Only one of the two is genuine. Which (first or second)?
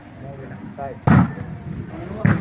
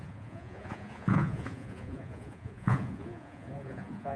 first